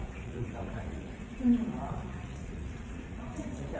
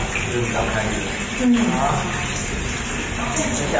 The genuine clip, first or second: second